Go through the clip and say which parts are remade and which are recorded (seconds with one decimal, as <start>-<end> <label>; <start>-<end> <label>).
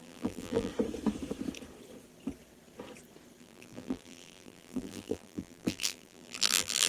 0.0-0.7 remade; 0.7-3.4 recorded; 3.4-6.9 remade